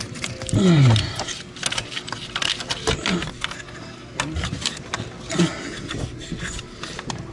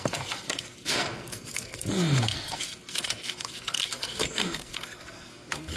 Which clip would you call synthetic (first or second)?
second